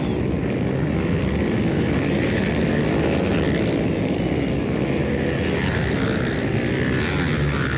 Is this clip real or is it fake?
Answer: real